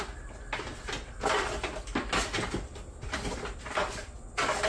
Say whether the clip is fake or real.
real